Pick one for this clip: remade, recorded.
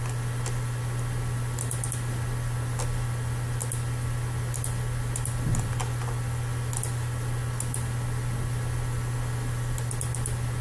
recorded